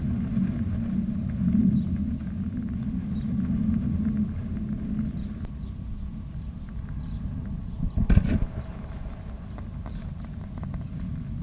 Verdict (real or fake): real